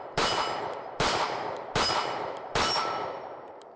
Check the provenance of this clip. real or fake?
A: fake